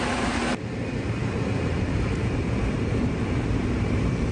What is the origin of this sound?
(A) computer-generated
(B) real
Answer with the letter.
A